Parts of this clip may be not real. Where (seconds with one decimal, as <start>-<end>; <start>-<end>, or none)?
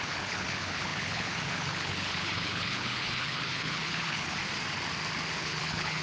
0.0-4.4; 5.3-6.0